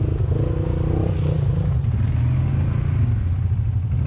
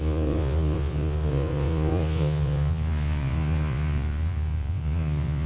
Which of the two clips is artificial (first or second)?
second